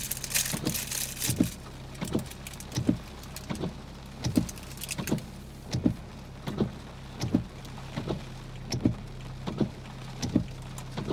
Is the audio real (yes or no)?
yes